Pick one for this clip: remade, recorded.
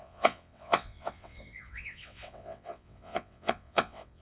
remade